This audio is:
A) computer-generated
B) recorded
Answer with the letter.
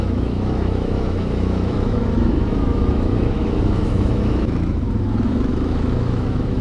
A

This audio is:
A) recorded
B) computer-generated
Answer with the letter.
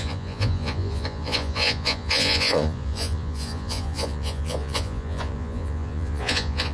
B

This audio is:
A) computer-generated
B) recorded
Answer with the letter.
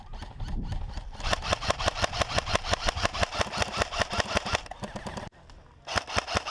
B